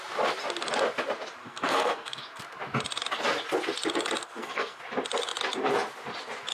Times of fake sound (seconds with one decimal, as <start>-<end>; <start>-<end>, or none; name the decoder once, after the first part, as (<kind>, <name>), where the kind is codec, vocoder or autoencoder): 1.4-2.4 (codec, SNAC); 4.2-4.8